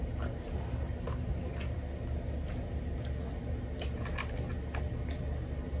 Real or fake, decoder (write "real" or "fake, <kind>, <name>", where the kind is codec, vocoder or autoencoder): real